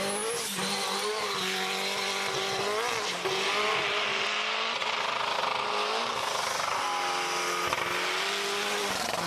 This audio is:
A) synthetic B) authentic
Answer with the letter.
B